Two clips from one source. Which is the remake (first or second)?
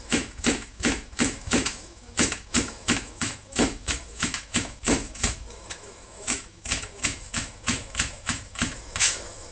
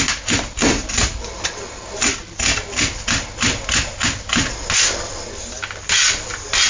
first